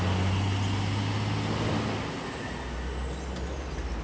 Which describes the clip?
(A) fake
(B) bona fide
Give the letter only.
B